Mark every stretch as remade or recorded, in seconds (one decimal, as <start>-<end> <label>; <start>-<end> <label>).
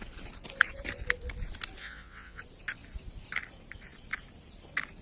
0.0-1.8 recorded; 1.8-2.4 remade; 2.4-5.0 recorded